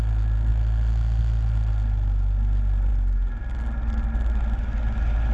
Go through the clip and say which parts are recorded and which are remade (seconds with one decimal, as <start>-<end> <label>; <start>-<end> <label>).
0.0-5.3 recorded